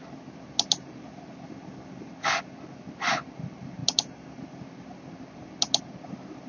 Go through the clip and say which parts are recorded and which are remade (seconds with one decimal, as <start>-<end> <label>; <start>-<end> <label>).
0.0-6.5 recorded